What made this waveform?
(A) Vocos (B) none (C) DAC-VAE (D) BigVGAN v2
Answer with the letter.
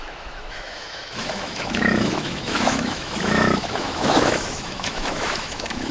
C